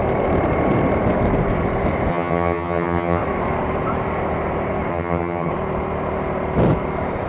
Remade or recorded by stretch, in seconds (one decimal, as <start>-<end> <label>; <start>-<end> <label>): 0.0-2.1 recorded; 2.1-3.2 remade; 3.2-4.9 recorded; 4.9-5.5 remade; 5.5-7.3 recorded